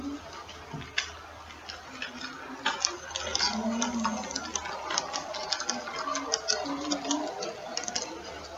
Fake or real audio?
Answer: real